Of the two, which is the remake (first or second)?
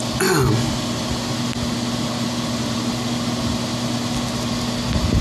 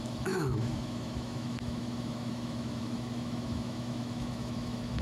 second